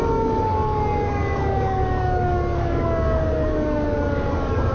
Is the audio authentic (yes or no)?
no